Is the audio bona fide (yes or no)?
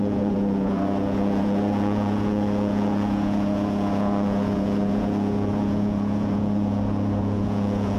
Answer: no